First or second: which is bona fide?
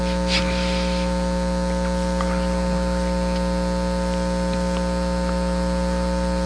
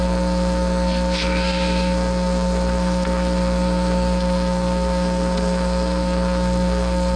first